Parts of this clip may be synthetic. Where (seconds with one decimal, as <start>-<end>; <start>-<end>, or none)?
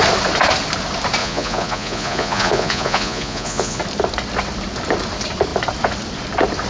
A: 1.2-3.8